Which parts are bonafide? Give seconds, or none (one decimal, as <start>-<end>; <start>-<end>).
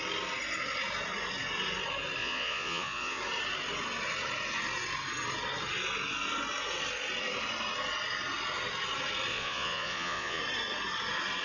0.0-2.2; 3.2-9.3; 10.4-11.4